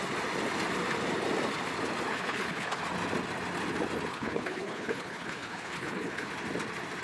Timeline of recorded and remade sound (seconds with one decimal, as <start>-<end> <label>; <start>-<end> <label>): 0.0-2.1 recorded; 2.1-2.8 remade; 2.8-4.1 recorded; 4.1-6.3 remade; 6.3-7.0 recorded

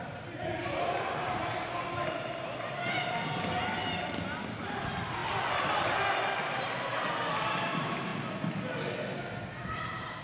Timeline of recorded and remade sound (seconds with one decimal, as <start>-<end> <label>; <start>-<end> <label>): 0.0-10.2 recorded

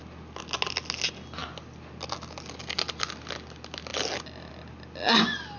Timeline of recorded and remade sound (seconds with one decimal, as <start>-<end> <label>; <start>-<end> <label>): 0.0-5.6 recorded